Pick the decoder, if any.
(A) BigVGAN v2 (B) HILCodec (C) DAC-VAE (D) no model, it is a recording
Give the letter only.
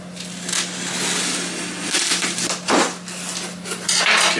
D